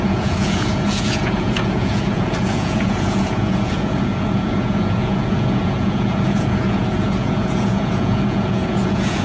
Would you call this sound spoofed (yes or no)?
yes